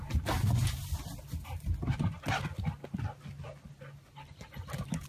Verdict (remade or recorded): recorded